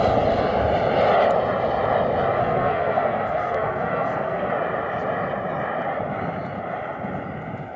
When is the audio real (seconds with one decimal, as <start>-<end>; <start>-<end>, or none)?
0.0-2.4; 4.5-7.8